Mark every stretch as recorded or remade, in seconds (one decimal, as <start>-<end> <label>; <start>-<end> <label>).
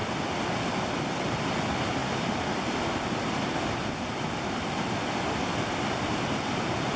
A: 0.0-7.0 recorded